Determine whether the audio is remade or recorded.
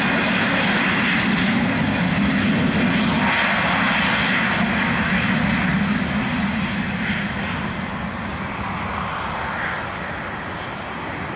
recorded